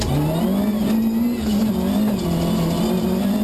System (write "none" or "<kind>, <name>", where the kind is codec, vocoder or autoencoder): none